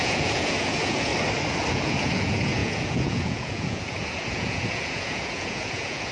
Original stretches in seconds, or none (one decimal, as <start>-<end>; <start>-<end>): 1.1-1.7